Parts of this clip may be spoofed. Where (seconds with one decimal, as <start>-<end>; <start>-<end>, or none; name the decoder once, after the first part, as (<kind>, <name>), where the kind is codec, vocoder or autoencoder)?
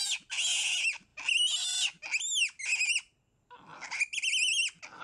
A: none